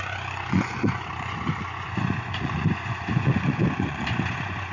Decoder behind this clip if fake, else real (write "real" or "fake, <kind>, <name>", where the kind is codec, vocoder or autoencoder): fake, vocoder, Vocos